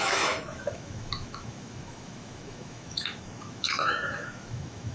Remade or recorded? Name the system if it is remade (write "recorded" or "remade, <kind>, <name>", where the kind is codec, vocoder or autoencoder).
remade, autoencoder, DAC-VAE